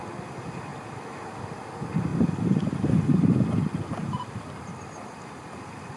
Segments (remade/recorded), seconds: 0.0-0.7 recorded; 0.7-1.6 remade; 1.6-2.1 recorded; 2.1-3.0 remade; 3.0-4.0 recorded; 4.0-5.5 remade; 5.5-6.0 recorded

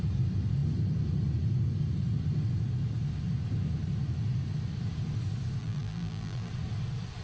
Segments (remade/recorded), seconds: 0.0-5.6 recorded; 5.6-6.5 remade; 6.5-7.2 recorded

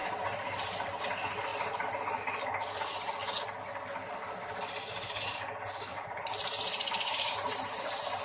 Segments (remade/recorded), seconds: 0.0-1.0 remade; 1.0-5.9 recorded; 5.9-8.2 remade

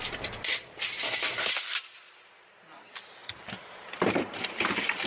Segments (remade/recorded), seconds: 0.0-3.2 recorded; 3.2-5.1 remade

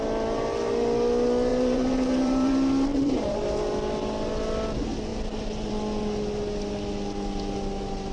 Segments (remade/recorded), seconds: 0.0-1.5 recorded; 1.5-2.5 remade; 2.5-2.9 recorded; 2.9-3.7 remade; 3.7-8.1 recorded

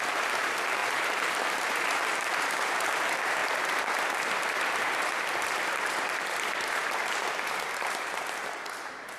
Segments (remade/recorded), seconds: 0.0-9.2 remade